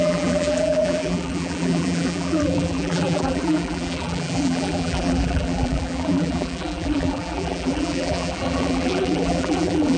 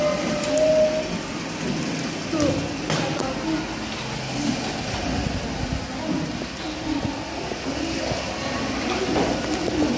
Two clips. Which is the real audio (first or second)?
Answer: second